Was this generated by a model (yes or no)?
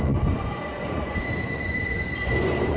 yes